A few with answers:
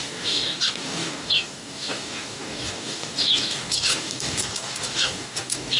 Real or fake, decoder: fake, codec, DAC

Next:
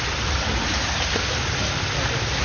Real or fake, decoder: real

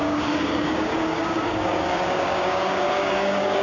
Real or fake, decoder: fake, codec, DAC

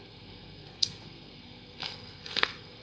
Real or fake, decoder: fake, codec, SNAC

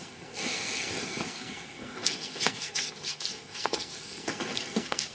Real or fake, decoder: fake, codec, SNAC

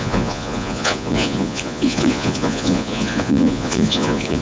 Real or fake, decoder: fake, vocoder, Vocos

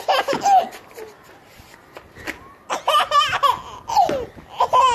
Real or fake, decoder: real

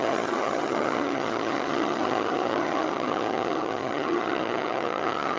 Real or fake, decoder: fake, vocoder, HiFi-GAN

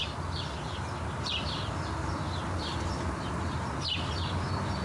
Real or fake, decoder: real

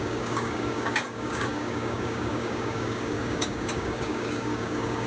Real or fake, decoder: fake, codec, DAC